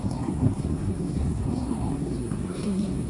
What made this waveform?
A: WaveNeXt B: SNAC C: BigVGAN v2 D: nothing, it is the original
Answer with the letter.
B